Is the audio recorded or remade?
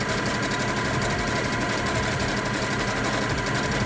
recorded